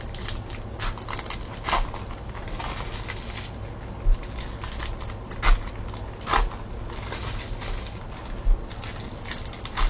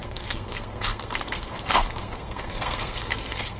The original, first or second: first